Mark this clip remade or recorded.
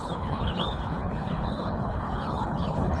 remade